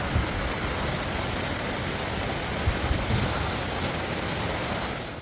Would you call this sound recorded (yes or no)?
yes